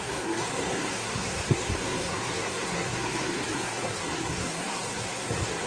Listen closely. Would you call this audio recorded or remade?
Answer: remade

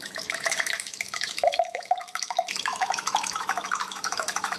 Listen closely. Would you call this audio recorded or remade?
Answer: remade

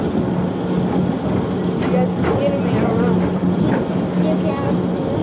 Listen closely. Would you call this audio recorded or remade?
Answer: recorded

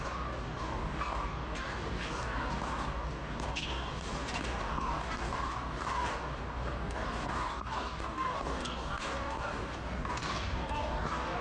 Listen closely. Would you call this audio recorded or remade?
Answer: remade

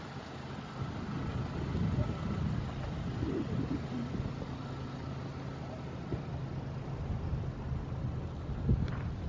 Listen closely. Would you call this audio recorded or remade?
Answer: recorded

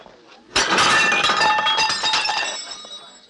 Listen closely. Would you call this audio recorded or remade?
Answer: recorded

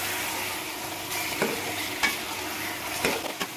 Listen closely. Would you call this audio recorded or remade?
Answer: recorded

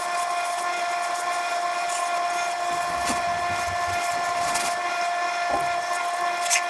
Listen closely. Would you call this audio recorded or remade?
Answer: recorded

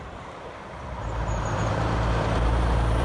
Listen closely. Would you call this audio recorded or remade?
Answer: remade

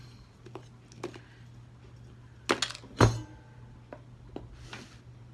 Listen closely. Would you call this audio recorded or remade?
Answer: recorded